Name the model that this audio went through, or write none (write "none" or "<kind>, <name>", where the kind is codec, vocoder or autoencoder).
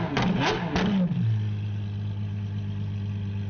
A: none